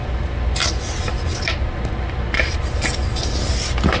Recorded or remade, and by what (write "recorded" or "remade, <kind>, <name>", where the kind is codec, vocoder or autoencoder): recorded